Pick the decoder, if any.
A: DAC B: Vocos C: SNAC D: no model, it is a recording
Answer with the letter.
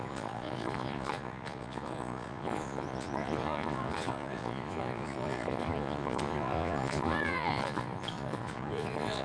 B